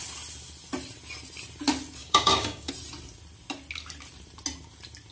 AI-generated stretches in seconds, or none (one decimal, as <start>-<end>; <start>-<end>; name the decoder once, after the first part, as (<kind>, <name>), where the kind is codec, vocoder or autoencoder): 2.0-2.7 (codec, DAC)